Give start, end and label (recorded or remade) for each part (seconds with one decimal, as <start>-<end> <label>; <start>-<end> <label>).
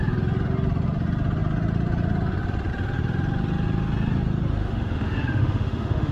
0.0-4.6 recorded; 4.6-6.1 remade